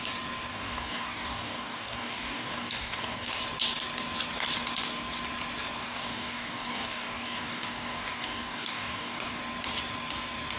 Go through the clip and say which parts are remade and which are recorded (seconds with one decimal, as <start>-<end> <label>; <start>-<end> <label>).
0.0-0.5 recorded; 0.5-3.3 remade; 3.3-5.8 recorded; 5.8-9.4 remade; 9.4-10.6 recorded